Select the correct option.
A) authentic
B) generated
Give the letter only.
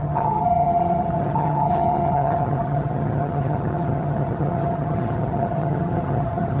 B